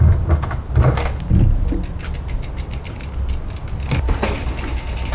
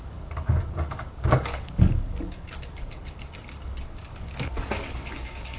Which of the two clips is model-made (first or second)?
second